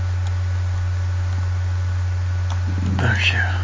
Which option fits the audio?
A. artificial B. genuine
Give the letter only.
B